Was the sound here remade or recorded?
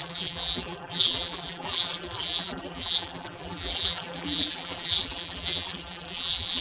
remade